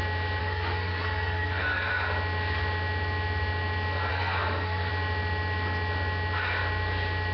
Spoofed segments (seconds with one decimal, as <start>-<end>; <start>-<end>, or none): 0.4-1.9; 4.1-4.9